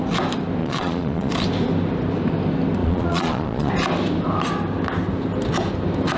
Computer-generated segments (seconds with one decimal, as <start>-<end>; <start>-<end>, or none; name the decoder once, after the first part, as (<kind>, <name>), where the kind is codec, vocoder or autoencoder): 0.6-1.3 (vocoder, Vocos); 2.8-3.7